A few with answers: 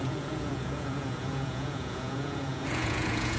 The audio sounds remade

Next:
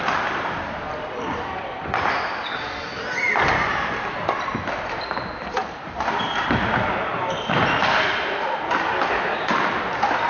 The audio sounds recorded